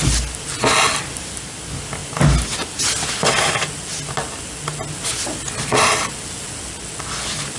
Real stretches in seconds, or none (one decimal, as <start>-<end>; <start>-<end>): 0.0-7.6